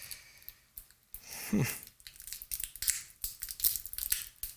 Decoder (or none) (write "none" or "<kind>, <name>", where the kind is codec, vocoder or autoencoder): none